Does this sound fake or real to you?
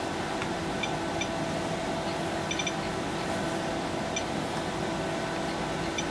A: real